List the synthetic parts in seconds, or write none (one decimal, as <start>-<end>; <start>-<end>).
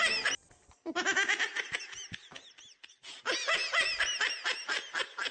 none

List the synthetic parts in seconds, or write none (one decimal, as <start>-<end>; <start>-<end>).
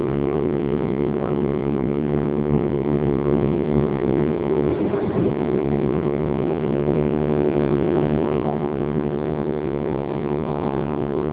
0.0-4.7; 5.3-11.3